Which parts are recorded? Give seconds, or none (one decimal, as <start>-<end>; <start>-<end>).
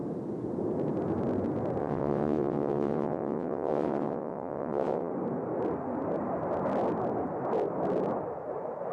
0.0-1.8; 5.1-8.9